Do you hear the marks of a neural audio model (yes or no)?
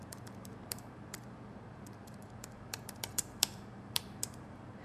yes